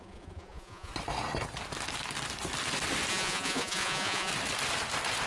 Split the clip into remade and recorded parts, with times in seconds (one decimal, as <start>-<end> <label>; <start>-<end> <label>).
0.0-0.9 remade; 0.9-3.1 recorded; 3.1-4.3 remade; 4.3-5.3 recorded